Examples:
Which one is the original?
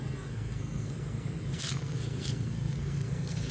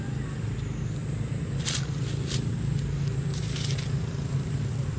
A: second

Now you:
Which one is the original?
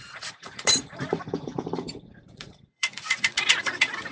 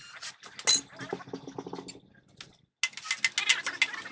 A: second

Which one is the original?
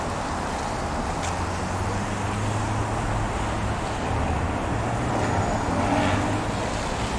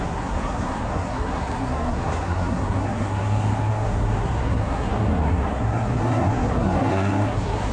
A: first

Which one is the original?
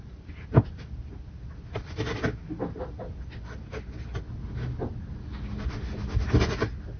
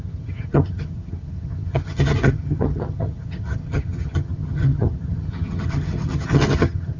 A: first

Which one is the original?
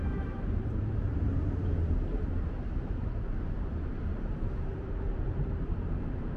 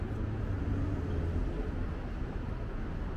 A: second